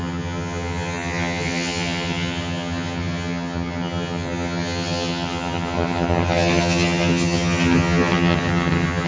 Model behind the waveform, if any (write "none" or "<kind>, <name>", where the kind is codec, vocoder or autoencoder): vocoder, HiFi-GAN